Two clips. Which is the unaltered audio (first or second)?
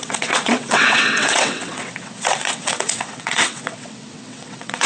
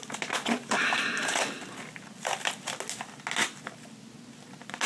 second